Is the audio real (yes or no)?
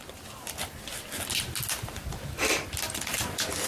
yes